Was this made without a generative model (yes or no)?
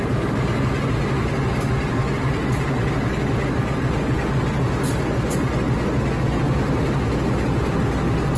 yes